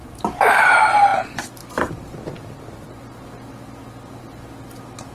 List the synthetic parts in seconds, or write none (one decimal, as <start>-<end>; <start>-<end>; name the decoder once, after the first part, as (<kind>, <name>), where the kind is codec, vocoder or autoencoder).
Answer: 1.1-3.0 (vocoder, BigVGAN v2)